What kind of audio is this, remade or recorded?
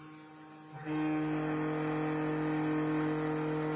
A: recorded